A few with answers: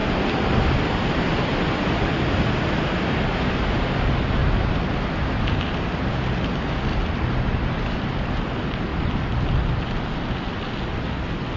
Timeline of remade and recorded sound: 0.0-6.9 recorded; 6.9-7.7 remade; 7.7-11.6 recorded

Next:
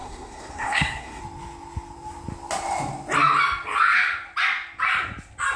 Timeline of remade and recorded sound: 0.0-1.2 remade; 1.2-5.6 recorded